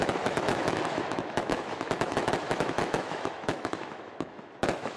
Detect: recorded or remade remade